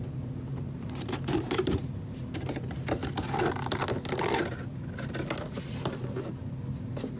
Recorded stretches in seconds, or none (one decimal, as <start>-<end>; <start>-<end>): 0.0-0.5; 2.6-7.2